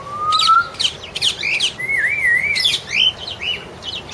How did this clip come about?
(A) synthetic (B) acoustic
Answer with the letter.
B